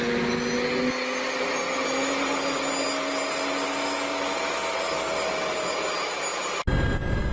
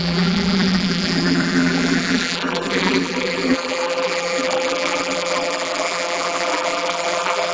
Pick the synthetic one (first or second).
second